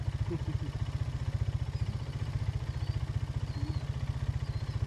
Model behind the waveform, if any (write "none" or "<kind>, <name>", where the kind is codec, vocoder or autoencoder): none